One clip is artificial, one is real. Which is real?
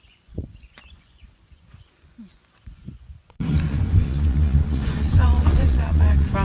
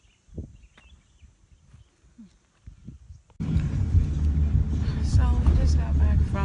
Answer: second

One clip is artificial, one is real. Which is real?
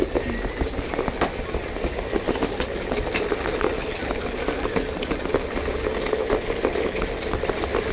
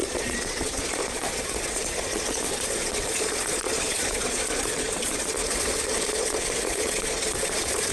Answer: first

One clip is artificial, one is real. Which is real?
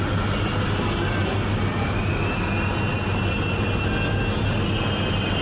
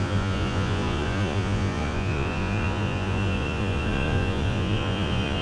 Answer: first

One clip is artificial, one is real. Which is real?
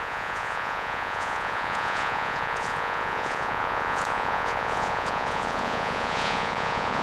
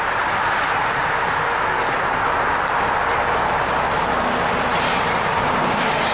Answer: second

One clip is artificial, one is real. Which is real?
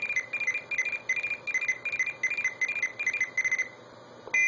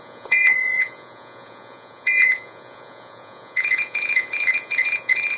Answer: first